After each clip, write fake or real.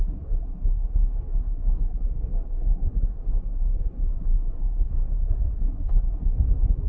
fake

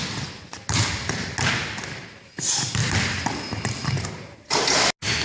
real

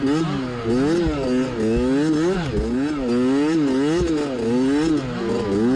real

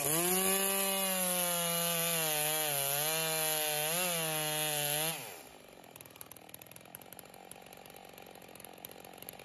real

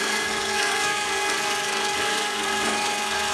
fake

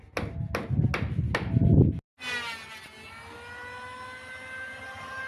real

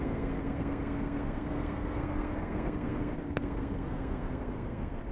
fake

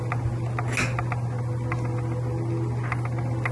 real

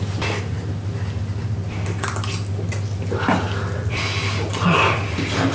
real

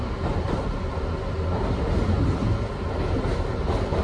real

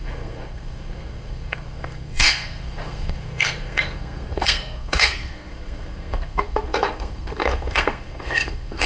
fake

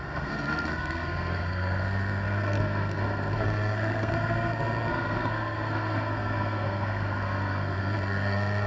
fake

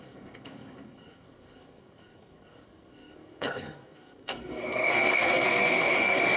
fake